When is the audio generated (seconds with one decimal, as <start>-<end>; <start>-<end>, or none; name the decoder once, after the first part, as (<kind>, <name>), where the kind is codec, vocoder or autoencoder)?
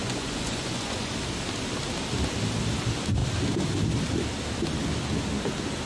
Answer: 0.0-1.1 (vocoder, Vocos)